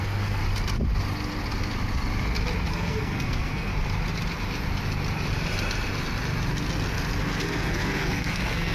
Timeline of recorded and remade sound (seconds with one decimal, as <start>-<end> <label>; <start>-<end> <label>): 0.0-0.4 remade; 0.4-2.7 recorded; 2.7-3.7 remade; 3.7-7.2 recorded; 7.2-8.7 remade